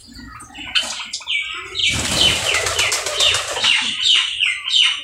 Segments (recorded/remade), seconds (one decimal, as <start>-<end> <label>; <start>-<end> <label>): 0.0-1.8 recorded; 1.8-2.4 remade; 2.4-5.0 recorded